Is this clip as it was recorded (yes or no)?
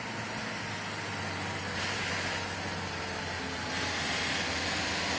yes